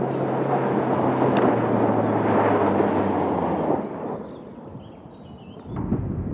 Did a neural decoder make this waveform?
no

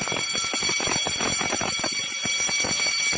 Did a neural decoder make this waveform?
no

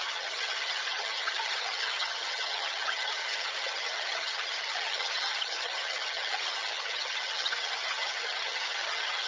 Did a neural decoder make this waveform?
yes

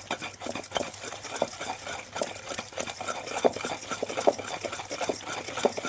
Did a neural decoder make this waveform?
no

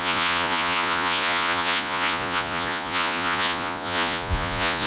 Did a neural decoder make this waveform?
yes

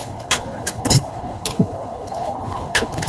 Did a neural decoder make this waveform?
yes